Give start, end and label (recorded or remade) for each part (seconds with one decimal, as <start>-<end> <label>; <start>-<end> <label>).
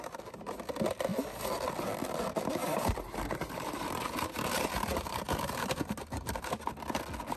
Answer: 0.0-2.6 recorded; 2.6-6.6 remade; 6.6-7.4 recorded